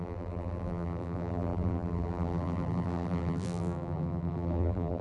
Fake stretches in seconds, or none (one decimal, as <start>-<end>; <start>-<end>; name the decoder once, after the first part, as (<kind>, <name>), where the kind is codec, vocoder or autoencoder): 0.0-5.0 (vocoder, BigVGAN v2)